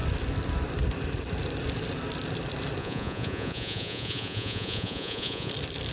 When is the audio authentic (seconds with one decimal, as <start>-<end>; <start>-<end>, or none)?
0.0-2.8; 5.5-5.9